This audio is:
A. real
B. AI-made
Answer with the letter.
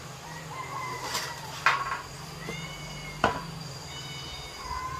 A